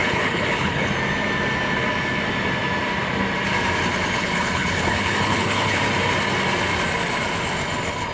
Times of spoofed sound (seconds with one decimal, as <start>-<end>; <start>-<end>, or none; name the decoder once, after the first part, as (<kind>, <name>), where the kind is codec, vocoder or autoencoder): 0.0-0.9 (codec, HILCodec); 4.2-5.8